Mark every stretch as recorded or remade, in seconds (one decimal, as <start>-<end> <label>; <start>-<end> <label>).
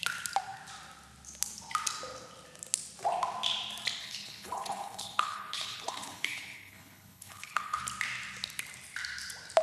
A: 0.0-4.0 recorded; 4.0-7.8 remade; 7.8-9.6 recorded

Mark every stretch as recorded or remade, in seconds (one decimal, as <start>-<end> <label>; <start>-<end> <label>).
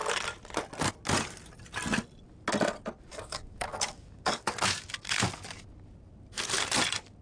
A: 0.0-3.1 recorded; 3.1-5.6 remade; 5.6-7.2 recorded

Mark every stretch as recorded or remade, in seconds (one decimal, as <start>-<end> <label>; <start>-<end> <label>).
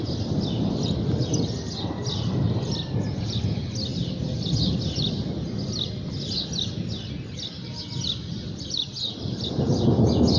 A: 0.0-10.4 recorded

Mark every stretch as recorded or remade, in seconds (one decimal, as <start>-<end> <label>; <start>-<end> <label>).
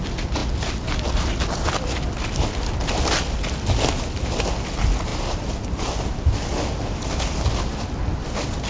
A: 0.0-8.7 recorded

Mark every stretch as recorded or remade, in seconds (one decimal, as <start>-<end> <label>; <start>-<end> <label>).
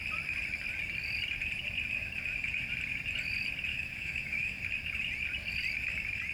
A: 0.0-3.7 recorded; 3.7-4.6 remade; 4.6-6.3 recorded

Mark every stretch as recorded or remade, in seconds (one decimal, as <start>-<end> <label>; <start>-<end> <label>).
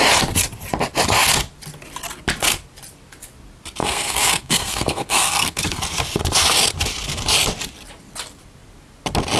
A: 0.0-3.8 recorded; 3.8-5.8 remade; 5.8-9.4 recorded